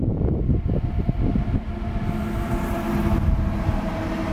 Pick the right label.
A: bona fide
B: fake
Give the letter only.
A